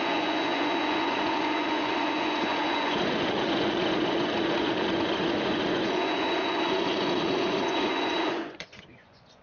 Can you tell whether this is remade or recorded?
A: remade